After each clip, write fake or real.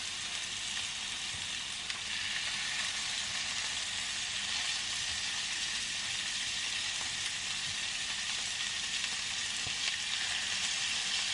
real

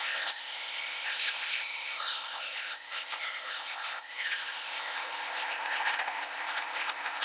fake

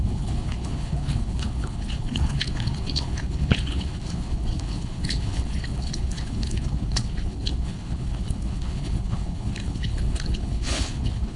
fake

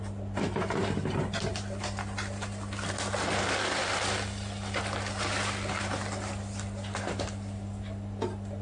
real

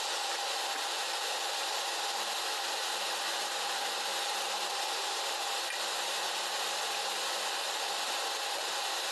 real